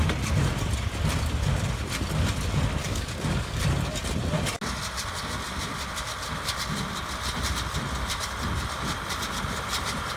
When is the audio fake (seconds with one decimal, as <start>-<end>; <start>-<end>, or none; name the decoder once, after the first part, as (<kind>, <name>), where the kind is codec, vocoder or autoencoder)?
2.8-3.6 (codec, DAC)